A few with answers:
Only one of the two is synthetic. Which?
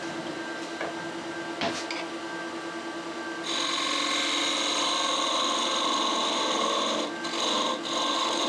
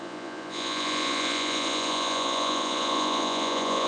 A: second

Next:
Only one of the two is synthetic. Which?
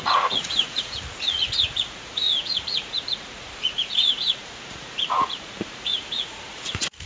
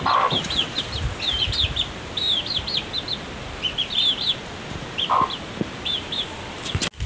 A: first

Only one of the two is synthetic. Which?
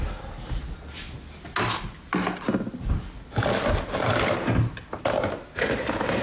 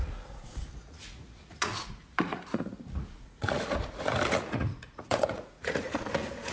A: second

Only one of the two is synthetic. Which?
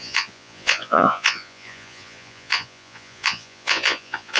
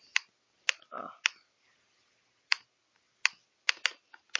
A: first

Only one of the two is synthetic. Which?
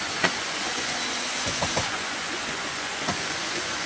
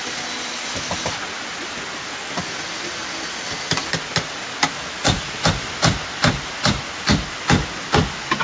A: first